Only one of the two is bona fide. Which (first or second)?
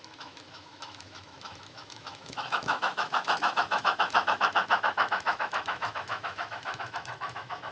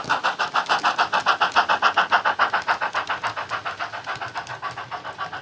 second